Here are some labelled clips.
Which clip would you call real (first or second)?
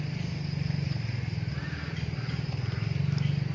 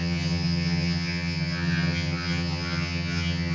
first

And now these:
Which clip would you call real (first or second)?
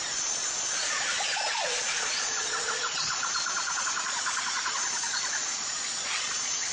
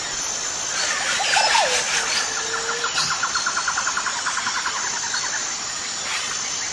second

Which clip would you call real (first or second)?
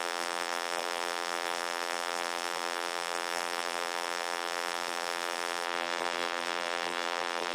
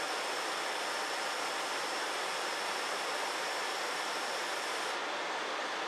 second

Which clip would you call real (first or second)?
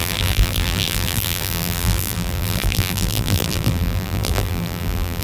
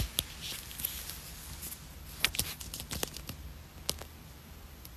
second